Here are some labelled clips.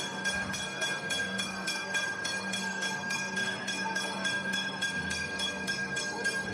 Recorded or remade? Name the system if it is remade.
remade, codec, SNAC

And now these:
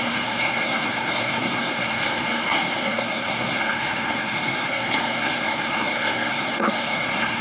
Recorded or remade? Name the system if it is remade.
remade, codec, SNAC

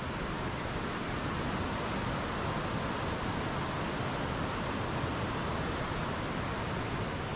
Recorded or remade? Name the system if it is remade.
recorded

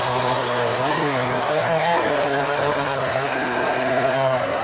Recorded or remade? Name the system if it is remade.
remade, codec, SNAC